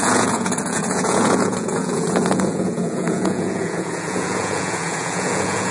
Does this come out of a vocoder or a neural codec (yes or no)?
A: yes